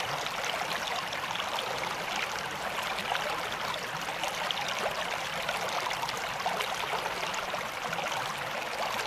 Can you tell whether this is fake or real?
real